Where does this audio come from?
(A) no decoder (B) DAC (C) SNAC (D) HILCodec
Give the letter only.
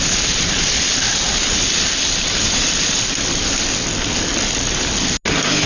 A